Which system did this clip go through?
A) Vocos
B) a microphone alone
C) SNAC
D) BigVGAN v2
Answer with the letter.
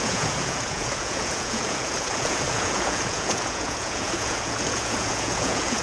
A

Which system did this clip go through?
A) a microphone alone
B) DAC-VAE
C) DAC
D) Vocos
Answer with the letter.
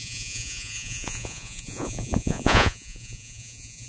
D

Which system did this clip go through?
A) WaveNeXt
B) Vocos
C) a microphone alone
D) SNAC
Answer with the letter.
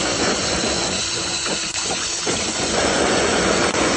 B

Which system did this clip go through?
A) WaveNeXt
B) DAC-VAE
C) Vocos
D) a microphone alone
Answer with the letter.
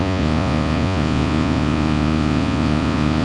C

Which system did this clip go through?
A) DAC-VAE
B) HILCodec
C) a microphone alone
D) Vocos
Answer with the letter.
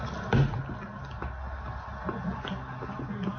C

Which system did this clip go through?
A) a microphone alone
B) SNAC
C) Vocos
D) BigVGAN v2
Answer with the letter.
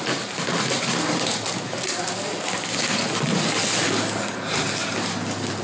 A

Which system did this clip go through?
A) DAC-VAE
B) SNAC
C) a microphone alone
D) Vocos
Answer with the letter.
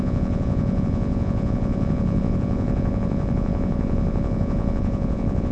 D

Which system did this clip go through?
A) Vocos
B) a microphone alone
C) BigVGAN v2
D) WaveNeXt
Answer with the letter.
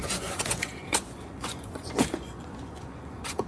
A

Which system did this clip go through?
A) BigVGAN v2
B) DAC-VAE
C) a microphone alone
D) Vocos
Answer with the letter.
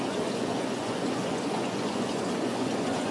D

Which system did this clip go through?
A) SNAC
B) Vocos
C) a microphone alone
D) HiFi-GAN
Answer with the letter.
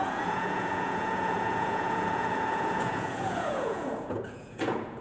B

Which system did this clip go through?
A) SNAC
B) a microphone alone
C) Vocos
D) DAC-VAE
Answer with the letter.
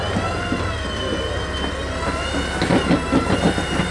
B